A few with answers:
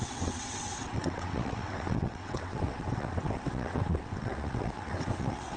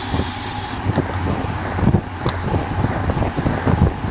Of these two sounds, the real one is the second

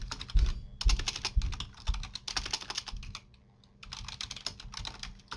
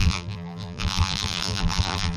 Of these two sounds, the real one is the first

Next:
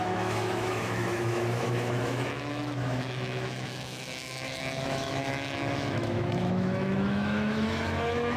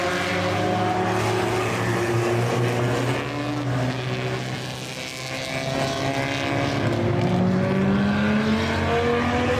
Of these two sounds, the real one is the second